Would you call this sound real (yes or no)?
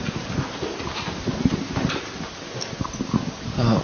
yes